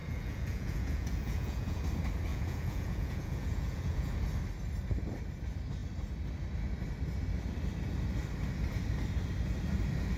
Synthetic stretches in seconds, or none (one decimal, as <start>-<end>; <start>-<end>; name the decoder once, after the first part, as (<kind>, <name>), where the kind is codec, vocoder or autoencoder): 0.0-1.8 (vocoder, Vocos); 2.3-4.1